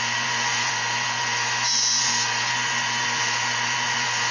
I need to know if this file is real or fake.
fake